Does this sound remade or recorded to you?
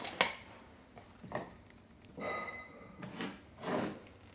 recorded